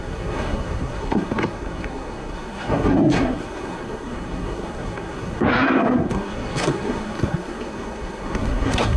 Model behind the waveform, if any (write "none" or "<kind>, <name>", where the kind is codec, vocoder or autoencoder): codec, SNAC